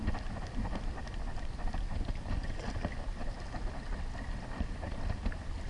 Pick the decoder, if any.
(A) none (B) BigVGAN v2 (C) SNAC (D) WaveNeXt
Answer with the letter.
A